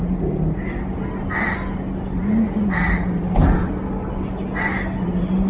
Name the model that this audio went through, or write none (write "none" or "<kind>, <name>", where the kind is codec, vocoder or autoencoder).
none